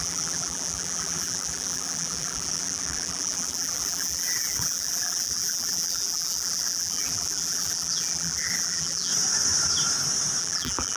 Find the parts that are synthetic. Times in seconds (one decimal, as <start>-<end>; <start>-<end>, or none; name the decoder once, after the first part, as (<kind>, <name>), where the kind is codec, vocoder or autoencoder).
0.0-9.1 (vocoder, BigVGAN v2); 10.4-11.0